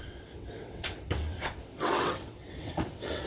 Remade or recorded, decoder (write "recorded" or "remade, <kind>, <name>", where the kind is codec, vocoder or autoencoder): remade, vocoder, WaveNeXt